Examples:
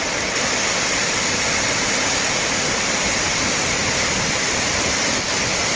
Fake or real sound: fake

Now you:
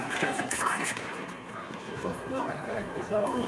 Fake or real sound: fake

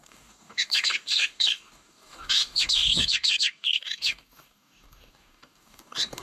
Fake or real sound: fake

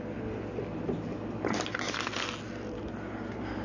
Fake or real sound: real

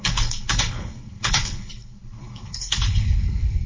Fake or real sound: fake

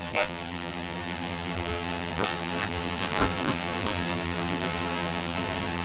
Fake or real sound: fake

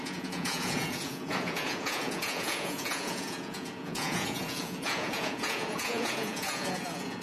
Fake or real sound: fake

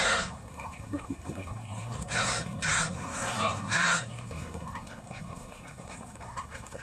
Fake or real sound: fake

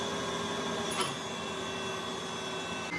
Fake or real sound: real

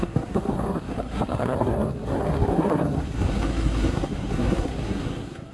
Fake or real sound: fake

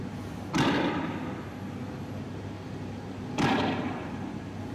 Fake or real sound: real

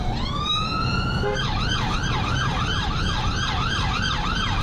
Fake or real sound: fake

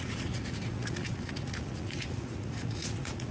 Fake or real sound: fake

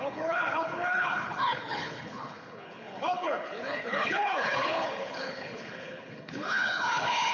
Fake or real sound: fake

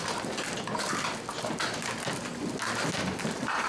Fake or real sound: real